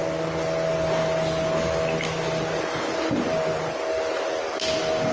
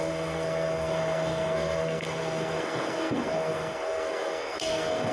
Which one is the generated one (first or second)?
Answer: second